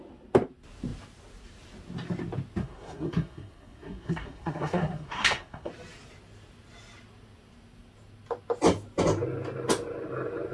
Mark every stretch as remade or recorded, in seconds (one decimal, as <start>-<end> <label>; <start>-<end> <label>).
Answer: 0.0-2.6 recorded; 2.6-5.7 remade; 5.7-10.5 recorded